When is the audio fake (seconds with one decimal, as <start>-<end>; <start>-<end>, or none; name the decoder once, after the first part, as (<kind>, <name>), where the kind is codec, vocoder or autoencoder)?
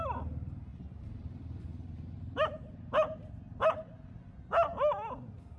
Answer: 0.7-4.1 (vocoder, BigVGAN v2)